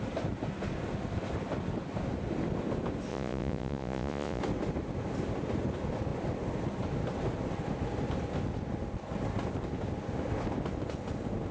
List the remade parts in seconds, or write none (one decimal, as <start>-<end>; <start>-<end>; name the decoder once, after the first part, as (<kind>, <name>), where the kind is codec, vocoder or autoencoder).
3.1-4.4 (vocoder, Vocos)